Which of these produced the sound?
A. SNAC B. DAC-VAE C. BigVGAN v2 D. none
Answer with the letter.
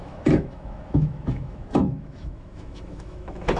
B